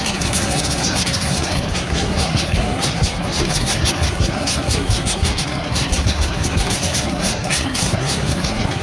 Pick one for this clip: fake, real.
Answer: fake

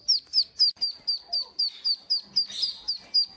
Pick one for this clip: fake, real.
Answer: real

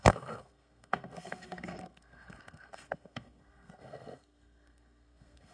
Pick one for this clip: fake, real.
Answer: fake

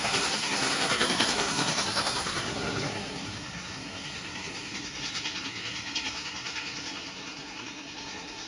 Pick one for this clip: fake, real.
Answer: fake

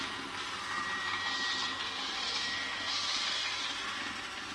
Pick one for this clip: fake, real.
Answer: real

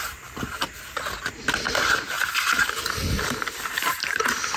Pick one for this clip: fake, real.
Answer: real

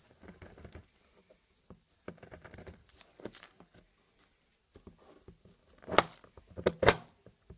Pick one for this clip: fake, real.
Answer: real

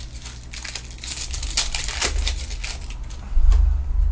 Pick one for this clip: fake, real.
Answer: real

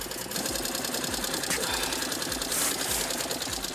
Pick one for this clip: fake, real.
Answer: real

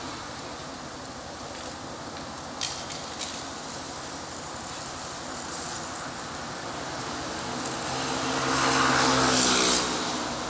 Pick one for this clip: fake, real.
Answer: real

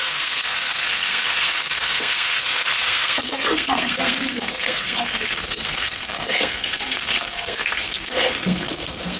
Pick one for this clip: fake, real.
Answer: fake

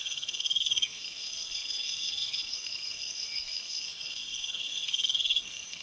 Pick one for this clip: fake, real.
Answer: fake